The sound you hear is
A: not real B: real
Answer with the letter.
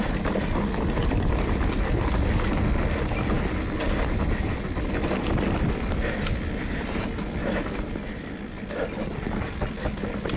B